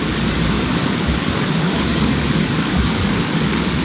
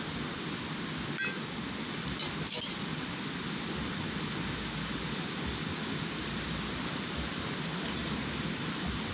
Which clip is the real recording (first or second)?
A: second